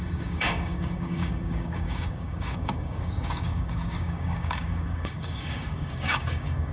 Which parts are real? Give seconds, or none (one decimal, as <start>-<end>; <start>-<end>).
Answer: none